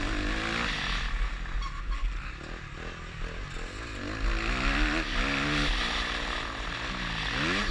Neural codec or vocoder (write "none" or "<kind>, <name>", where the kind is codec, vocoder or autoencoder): none